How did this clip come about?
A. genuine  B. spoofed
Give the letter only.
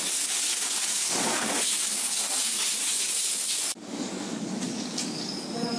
B